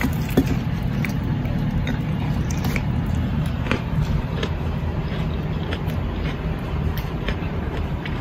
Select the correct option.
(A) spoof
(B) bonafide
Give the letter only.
A